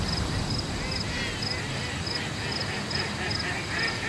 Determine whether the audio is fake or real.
real